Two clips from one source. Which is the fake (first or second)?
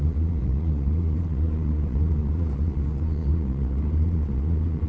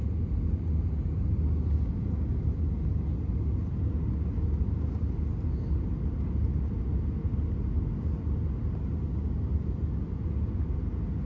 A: first